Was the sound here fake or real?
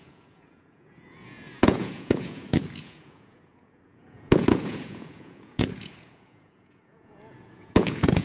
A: fake